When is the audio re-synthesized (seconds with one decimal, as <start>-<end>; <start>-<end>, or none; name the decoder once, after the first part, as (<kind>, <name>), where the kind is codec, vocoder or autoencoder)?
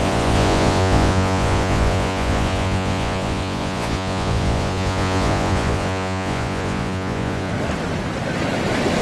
0.0-7.5 (vocoder, Vocos)